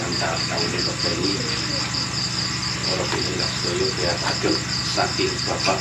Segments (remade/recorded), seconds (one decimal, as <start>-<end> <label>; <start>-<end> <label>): 0.0-5.8 recorded